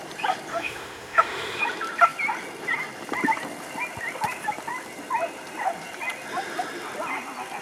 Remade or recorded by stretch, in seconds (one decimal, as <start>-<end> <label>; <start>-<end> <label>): 0.0-0.5 recorded; 0.5-1.6 remade; 1.6-7.6 recorded